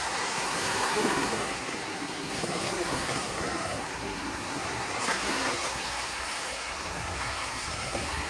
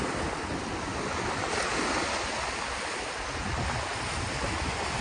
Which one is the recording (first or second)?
second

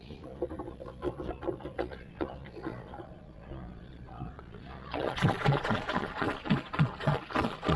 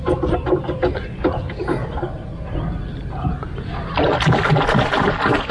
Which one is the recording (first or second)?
second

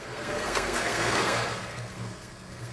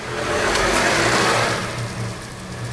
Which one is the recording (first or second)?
second